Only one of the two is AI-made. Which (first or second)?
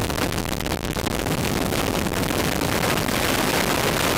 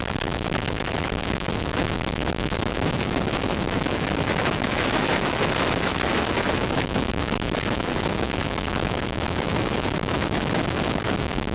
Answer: second